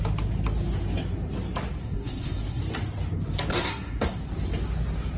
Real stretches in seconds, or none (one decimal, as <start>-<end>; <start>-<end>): 0.0-1.8; 2.6-3.5; 4.2-5.2